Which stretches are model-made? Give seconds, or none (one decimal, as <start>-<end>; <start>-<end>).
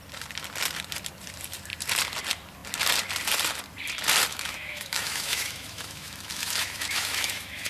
4.3-7.7